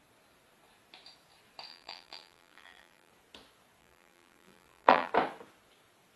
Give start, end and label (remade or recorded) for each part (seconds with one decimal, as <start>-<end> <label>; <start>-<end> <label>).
0.0-1.7 recorded; 1.7-3.1 remade; 3.1-3.8 recorded; 3.8-5.1 remade; 5.1-6.2 recorded